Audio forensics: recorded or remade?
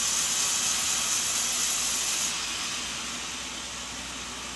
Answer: recorded